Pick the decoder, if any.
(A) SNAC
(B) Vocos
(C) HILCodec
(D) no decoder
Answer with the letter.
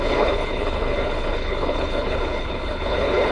C